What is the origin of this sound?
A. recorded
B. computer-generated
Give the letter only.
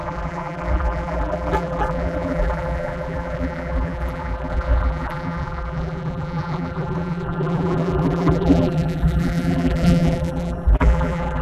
B